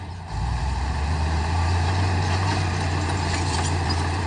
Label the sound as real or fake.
fake